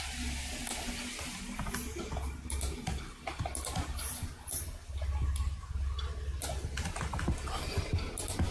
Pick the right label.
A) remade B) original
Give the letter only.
B